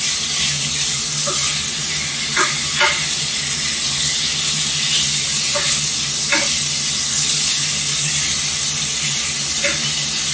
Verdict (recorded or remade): recorded